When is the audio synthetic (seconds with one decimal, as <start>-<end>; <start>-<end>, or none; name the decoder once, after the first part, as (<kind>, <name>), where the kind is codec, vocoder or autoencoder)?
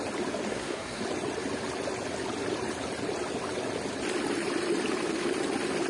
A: 0.5-1.0 (codec, SNAC)